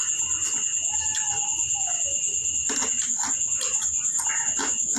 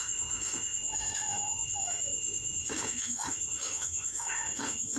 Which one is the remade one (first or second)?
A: second